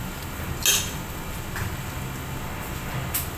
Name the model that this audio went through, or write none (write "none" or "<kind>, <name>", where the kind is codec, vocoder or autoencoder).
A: none